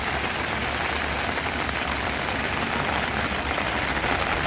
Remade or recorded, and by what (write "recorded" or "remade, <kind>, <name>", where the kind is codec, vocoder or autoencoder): recorded